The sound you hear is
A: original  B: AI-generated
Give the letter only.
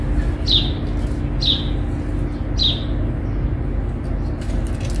A